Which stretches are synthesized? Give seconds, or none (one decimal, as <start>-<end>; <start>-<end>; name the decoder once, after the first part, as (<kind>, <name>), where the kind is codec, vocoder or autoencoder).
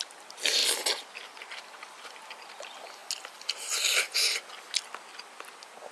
none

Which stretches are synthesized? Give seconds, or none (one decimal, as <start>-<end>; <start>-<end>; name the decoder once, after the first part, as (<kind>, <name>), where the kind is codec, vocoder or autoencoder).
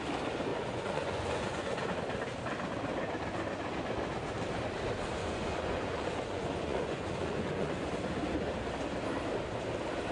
0.5-1.9 (vocoder, Vocos); 5.2-7.9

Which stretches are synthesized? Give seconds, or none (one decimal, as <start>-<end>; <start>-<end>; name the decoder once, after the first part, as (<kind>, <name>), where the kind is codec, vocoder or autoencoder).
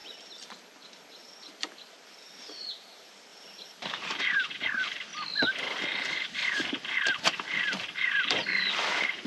0.0-5.1 (vocoder, BigVGAN v2); 6.1-9.3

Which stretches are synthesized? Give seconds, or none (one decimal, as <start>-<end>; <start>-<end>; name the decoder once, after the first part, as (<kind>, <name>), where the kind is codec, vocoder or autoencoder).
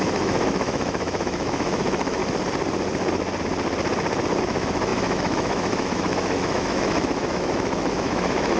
0.0-2.2 (autoencoder, DAC-VAE); 4.4-8.6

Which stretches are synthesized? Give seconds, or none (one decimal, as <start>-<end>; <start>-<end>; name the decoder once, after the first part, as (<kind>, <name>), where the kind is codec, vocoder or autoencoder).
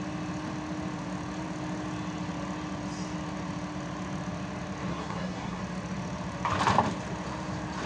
4.9-5.6 (codec, SNAC)